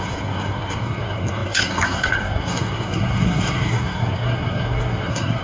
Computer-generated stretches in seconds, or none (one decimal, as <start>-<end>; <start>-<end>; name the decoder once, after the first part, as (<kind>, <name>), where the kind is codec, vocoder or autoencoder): 0.0-5.4 (codec, SNAC)